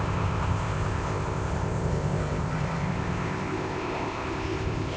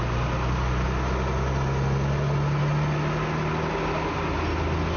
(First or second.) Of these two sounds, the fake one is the first